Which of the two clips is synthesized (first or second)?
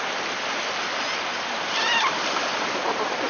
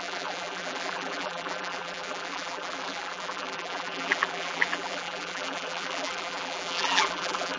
second